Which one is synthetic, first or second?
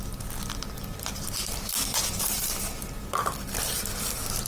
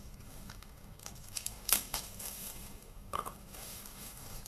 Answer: second